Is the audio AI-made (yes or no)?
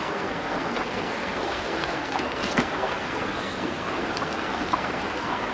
yes